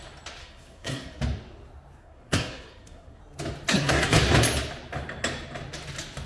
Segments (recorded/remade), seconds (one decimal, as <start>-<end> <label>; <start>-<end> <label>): 0.0-0.4 recorded; 0.4-1.2 remade; 1.2-2.0 recorded; 2.0-3.2 remade; 3.2-3.7 recorded; 3.7-4.2 remade; 4.2-6.3 recorded